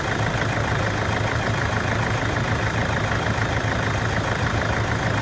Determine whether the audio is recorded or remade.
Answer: remade